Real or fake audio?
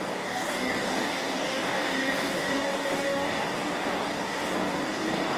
fake